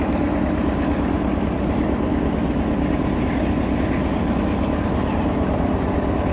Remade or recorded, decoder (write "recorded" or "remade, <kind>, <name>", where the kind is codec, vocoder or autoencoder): recorded